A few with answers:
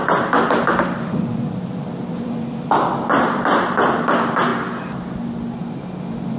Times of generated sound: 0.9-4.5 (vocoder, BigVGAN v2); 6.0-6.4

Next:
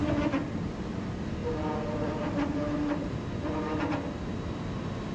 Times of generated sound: 1.4-3.2 (vocoder, BigVGAN v2)

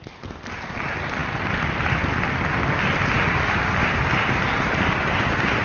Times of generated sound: none

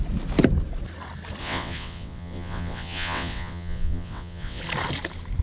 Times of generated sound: 1.4-4.6 (vocoder, WaveNeXt)

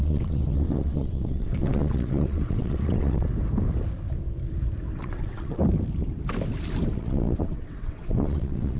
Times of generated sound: 0.0-3.3 (vocoder, WaveNeXt); 5.0-5.6; 6.9-8.8

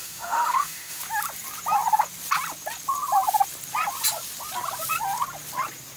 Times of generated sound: 0.0-1.0 (autoencoder, DAC-VAE)

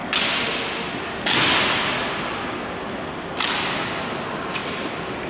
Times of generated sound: none

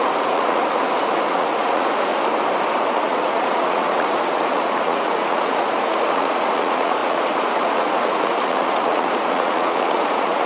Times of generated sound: 0.0-0.6 (vocoder, Vocos); 1.3-2.1; 2.8-10.5